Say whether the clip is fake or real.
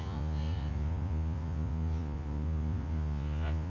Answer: fake